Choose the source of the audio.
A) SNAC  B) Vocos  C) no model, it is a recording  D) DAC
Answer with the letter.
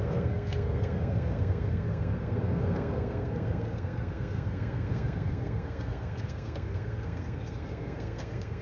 A